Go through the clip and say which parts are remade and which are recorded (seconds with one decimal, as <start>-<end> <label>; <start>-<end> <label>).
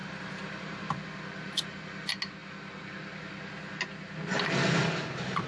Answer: 0.0-0.9 remade; 0.9-5.5 recorded